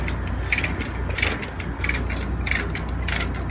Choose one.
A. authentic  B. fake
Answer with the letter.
A